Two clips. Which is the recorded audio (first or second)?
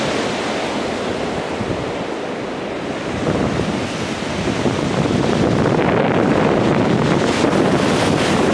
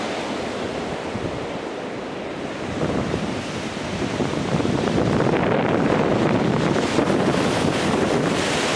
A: first